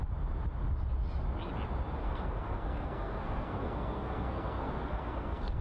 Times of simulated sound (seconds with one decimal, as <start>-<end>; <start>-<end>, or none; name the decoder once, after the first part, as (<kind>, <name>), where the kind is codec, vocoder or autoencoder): 2.0-5.6 (codec, SNAC)